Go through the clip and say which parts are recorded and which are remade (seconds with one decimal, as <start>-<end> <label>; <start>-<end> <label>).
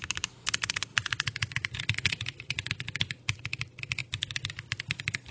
0.0-0.9 recorded; 0.9-2.7 remade; 2.7-5.3 recorded